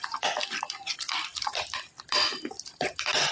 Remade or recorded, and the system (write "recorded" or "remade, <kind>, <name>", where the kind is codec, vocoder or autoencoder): remade, vocoder, BigVGAN v2